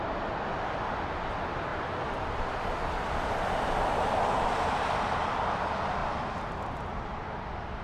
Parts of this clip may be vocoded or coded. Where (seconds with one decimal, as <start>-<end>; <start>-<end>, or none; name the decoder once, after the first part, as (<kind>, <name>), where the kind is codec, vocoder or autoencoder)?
1.7-3.9 (vocoder, BigVGAN v2); 6.0-6.5